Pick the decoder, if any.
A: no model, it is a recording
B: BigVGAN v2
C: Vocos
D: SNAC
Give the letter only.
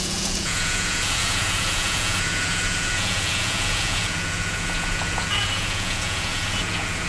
C